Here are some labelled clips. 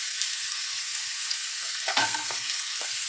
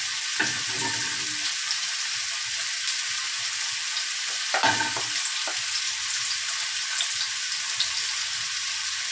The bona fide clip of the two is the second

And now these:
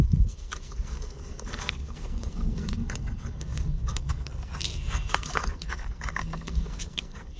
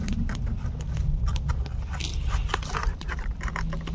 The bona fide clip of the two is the second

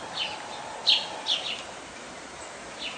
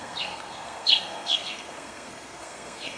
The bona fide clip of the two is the first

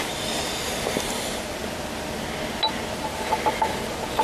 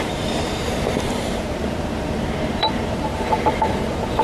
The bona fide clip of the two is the first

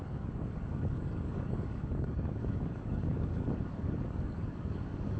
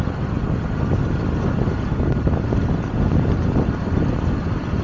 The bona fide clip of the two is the second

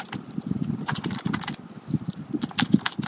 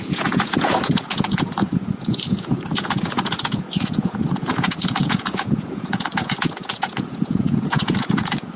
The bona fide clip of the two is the first